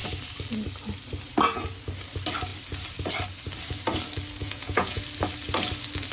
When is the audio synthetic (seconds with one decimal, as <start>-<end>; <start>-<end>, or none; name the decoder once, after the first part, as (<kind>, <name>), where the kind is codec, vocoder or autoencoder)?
4.4-5.0 (vocoder, Vocos)

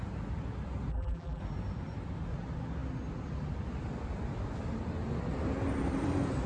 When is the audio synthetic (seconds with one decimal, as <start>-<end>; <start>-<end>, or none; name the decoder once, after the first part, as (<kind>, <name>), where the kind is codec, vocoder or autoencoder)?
0.9-1.4 (vocoder, BigVGAN v2)

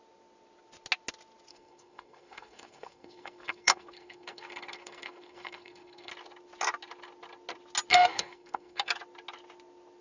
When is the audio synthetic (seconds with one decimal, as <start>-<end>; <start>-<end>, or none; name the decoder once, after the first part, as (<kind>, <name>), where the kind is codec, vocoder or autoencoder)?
1.5-6.1 (codec, SNAC); 7.9-8.9